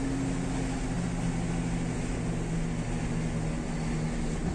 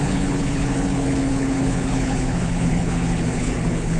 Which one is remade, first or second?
second